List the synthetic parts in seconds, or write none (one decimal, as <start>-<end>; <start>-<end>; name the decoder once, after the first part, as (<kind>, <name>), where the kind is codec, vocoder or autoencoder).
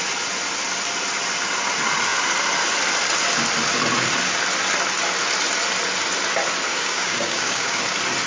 6.7-7.8 (codec, DAC)